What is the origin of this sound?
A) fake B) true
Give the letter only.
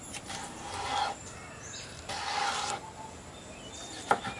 B